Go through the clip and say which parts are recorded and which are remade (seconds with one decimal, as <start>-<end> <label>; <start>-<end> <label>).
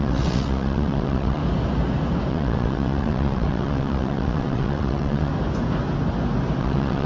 0.0-1.4 remade; 1.4-2.3 recorded; 2.3-5.3 remade; 5.3-6.6 recorded; 6.6-7.1 remade